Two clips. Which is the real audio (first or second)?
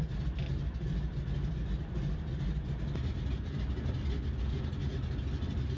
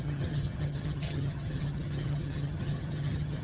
first